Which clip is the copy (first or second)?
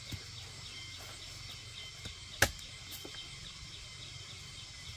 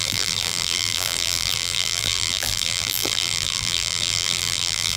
second